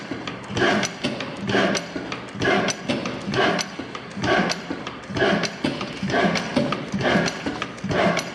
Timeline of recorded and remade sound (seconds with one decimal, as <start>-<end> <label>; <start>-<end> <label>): 0.0-8.3 recorded